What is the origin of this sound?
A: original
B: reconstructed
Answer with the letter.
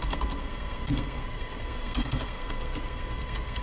B